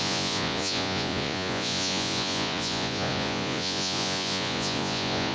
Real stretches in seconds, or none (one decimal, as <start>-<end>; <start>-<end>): none